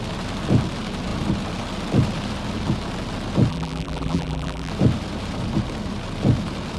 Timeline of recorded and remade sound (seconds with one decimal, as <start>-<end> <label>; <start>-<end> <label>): 0.0-3.5 recorded; 3.5-4.7 remade; 4.7-6.8 recorded